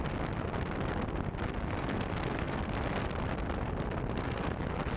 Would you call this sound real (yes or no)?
yes